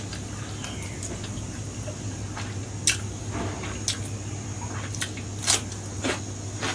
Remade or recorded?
recorded